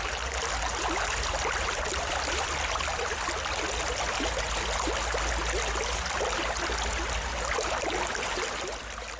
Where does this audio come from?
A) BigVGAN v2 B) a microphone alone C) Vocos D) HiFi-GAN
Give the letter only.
B